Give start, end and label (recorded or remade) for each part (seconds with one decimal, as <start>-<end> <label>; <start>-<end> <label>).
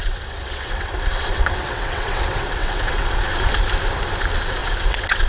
0.0-3.2 remade; 3.2-4.6 recorded; 4.6-5.3 remade